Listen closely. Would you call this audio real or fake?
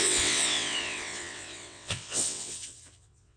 fake